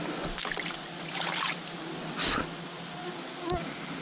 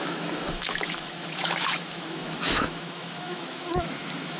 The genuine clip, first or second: first